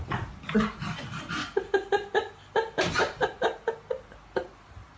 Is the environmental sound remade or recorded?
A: recorded